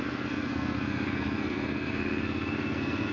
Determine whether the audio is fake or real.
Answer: fake